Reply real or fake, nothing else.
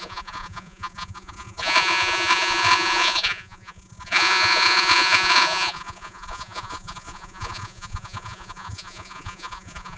fake